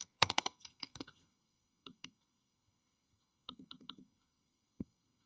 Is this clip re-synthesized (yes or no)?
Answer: yes